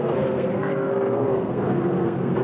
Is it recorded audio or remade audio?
remade